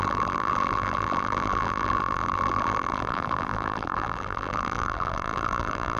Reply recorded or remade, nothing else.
remade